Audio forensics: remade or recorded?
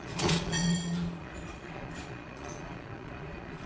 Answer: remade